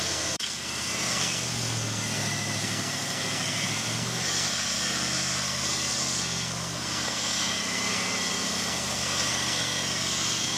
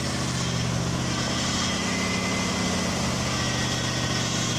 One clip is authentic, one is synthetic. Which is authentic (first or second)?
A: second